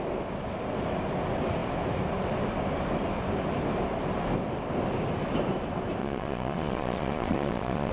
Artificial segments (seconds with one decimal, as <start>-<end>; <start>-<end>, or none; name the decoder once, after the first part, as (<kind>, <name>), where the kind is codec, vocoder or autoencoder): 6.0-7.9 (vocoder, Vocos)